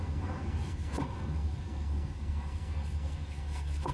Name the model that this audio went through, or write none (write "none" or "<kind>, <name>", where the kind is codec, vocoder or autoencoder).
codec, SNAC